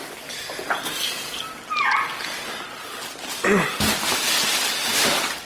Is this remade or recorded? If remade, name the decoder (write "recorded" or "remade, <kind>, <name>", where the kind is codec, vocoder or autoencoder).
recorded